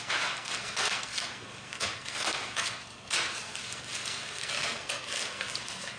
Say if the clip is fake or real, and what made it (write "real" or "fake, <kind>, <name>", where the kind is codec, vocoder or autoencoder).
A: fake, codec, SNAC